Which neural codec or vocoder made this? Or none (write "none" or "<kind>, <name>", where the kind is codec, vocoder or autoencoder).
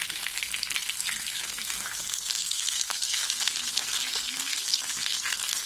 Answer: codec, SNAC